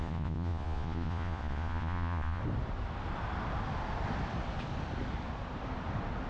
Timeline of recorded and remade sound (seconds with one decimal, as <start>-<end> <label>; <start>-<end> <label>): 0.0-2.4 remade; 2.4-6.3 recorded